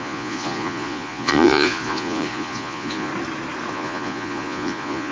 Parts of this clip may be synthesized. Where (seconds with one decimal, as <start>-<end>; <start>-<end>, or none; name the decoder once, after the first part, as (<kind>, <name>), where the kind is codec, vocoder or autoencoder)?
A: 0.0-3.1 (vocoder, Vocos); 3.7-5.1